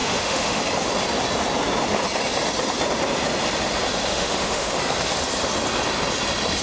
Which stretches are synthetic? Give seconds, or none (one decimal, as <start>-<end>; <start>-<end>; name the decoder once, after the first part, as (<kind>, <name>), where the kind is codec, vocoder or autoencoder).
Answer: 0.0-0.6 (autoencoder, DAC-VAE); 4.1-4.8